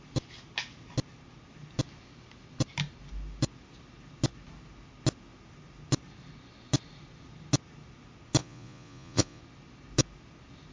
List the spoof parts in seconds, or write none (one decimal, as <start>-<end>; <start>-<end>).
8.4-9.4